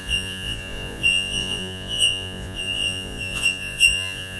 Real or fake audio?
fake